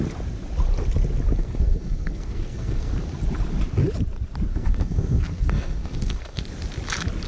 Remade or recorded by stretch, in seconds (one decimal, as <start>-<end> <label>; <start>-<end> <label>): 0.0-1.4 recorded; 1.4-2.9 remade; 2.9-4.5 recorded; 4.5-6.4 remade; 6.4-7.3 recorded